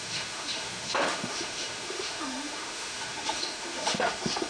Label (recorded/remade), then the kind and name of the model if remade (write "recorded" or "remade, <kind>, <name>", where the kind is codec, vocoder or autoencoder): remade, autoencoder, DAC-VAE